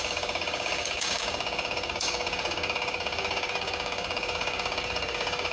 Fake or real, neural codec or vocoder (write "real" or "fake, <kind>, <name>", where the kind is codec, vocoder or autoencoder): fake, codec, DAC